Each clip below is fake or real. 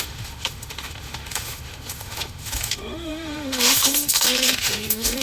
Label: fake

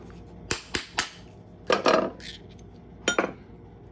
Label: real